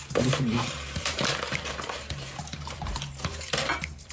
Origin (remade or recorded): remade